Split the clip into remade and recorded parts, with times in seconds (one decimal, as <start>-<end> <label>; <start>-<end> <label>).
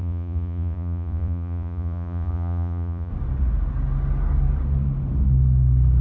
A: 0.0-3.1 remade; 3.1-6.0 recorded